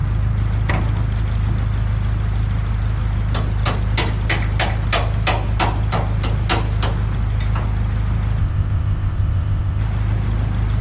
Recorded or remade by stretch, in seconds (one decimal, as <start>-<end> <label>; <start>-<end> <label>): 0.0-8.4 recorded; 8.4-9.8 remade; 9.8-10.8 recorded